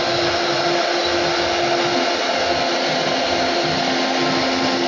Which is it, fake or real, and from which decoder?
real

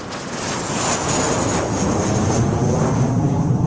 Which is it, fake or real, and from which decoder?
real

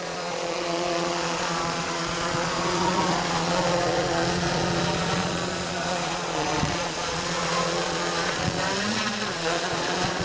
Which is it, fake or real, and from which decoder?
fake, vocoder, Vocos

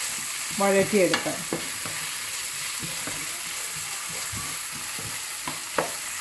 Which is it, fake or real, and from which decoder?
real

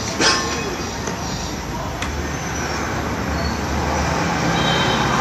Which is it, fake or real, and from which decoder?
real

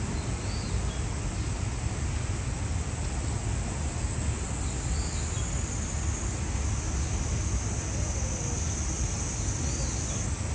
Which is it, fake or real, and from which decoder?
real